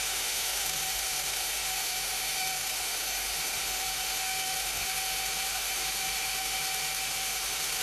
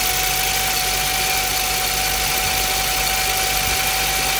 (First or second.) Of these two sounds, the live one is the second